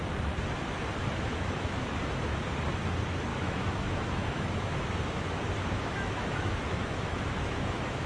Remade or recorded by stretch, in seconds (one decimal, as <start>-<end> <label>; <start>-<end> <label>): 0.0-1.0 recorded; 1.0-2.0 remade; 2.0-3.3 recorded; 3.3-8.1 remade